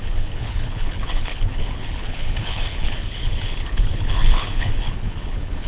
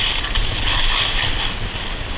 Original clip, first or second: second